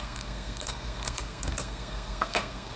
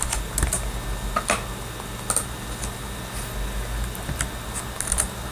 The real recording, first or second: second